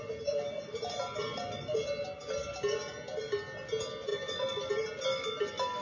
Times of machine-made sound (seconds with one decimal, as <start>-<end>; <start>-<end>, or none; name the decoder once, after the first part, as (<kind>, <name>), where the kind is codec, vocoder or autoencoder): none